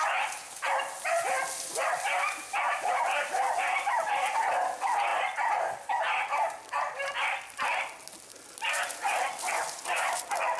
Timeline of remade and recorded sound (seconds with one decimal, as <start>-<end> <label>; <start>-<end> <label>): 0.0-10.6 recorded